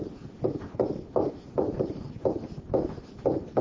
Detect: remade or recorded recorded